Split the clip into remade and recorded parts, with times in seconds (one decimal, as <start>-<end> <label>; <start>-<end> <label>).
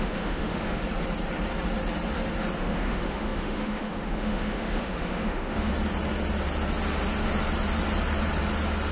0.0-0.8 remade; 0.8-2.6 recorded; 2.6-5.7 remade; 5.7-8.9 recorded